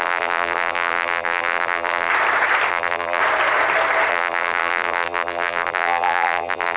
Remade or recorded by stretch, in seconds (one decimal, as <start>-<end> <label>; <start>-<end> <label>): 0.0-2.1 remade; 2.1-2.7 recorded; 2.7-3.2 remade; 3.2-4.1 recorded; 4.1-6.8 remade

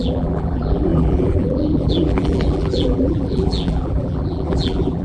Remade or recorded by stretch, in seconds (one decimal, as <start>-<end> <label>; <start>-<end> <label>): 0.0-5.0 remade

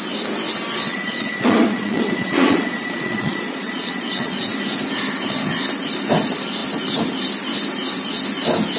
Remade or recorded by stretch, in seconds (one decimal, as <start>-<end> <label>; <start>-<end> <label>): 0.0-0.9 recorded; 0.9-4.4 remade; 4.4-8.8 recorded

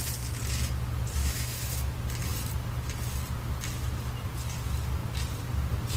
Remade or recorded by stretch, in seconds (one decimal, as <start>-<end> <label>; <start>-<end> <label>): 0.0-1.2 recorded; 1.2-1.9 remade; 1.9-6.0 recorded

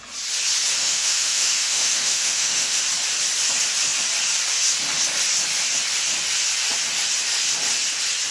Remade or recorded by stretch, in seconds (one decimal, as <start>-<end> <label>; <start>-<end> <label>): 0.0-0.8 recorded; 0.8-2.8 remade; 2.8-8.3 recorded

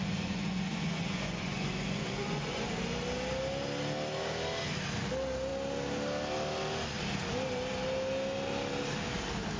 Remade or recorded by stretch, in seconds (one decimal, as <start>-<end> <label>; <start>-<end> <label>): 0.0-2.7 remade; 2.7-9.6 recorded

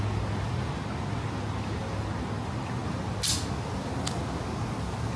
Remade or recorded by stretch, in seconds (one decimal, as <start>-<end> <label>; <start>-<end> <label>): 0.0-5.2 recorded

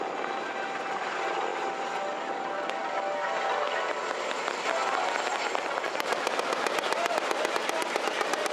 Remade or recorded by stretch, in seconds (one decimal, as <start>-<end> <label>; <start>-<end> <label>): 0.0-8.5 recorded